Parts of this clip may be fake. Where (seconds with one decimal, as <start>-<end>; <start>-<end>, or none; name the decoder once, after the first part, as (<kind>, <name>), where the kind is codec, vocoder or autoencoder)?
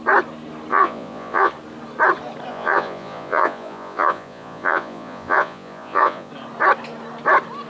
0.7-1.5 (vocoder, Vocos); 2.5-6.3